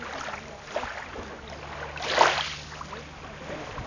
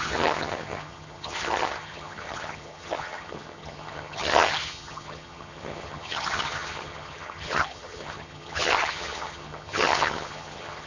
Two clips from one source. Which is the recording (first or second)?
first